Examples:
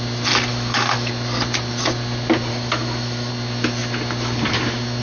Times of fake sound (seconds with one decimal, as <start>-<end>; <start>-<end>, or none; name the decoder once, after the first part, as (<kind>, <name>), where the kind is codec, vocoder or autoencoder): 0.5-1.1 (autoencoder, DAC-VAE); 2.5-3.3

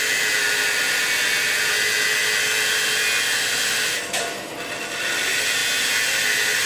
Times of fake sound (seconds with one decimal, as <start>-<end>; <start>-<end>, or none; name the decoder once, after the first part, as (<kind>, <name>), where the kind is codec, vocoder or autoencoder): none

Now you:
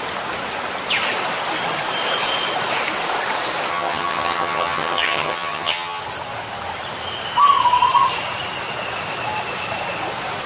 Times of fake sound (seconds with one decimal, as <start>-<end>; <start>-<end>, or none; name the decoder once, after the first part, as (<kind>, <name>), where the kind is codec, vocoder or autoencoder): 3.7-6.0 (vocoder, HiFi-GAN)

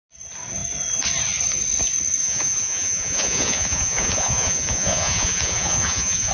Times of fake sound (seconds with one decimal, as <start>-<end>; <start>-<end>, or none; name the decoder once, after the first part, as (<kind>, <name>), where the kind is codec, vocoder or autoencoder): 2.2-6.3 (vocoder, Vocos)

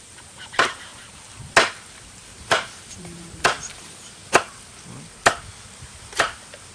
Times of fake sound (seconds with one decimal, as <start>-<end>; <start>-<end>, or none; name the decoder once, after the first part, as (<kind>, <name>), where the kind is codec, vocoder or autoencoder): 0.0-0.9 (vocoder, BigVGAN v2); 1.8-4.2; 5.7-6.7

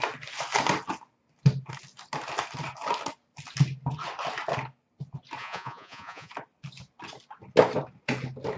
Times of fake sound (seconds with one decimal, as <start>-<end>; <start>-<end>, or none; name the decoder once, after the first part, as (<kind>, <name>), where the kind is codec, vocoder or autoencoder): 5.4-6.3 (vocoder, Vocos)

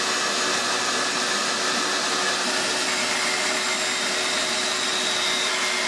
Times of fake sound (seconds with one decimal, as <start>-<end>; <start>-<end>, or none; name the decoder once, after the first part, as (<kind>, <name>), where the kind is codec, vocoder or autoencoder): none

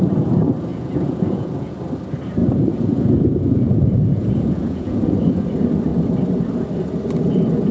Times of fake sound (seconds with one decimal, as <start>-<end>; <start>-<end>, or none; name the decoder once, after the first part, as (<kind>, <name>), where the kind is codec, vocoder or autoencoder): 0.7-1.8 (vocoder, Vocos); 2.4-5.1